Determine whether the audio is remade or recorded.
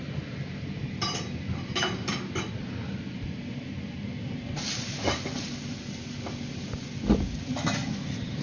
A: recorded